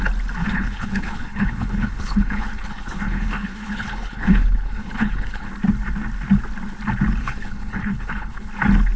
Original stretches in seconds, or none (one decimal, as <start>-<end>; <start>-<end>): 0.0-0.4; 5.5-7.2; 8.5-9.0